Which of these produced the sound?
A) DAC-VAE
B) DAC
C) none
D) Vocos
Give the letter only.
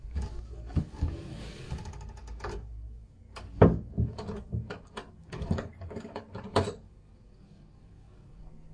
B